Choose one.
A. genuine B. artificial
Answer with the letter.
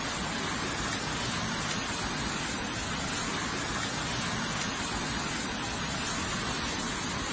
A